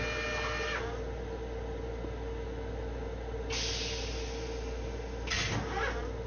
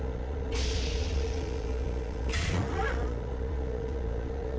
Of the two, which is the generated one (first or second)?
second